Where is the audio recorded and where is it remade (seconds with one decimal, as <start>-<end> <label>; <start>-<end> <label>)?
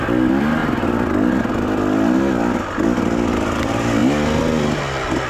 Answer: 0.0-5.3 recorded